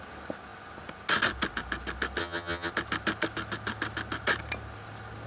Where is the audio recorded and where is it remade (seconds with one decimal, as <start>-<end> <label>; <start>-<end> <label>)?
0.0-2.2 recorded; 2.2-2.7 remade; 2.7-5.3 recorded